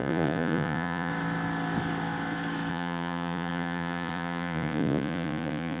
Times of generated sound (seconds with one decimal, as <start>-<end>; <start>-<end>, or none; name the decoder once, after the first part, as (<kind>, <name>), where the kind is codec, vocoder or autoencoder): 0.0-1.1 (vocoder, Vocos); 2.7-5.8